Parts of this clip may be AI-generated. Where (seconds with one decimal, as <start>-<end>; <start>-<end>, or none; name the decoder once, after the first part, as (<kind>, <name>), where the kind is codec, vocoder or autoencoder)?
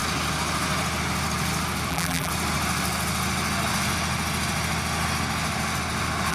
1.9-2.3 (vocoder, BigVGAN v2)